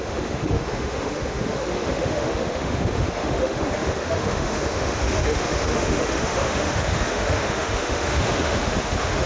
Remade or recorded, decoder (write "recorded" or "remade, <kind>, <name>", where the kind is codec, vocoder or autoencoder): remade, autoencoder, DAC-VAE